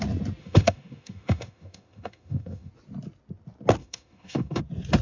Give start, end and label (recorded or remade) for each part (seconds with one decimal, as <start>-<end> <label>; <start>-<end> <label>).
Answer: 0.0-0.4 recorded; 0.4-2.7 remade; 2.7-3.8 recorded; 3.8-4.6 remade; 4.6-5.0 recorded